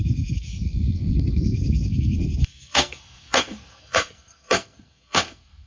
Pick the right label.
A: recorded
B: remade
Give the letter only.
B